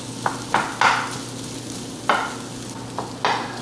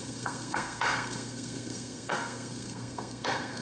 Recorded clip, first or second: first